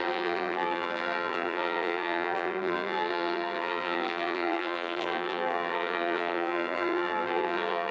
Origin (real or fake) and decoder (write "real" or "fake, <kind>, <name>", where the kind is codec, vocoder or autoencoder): fake, vocoder, BigVGAN v2